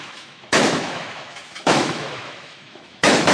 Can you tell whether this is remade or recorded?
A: remade